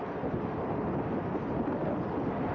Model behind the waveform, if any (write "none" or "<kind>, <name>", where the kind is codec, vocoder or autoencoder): none